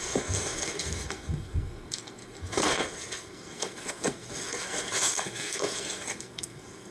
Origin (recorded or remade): remade